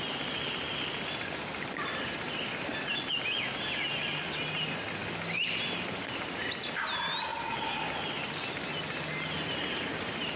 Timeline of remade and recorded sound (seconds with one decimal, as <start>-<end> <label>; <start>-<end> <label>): 0.0-10.4 recorded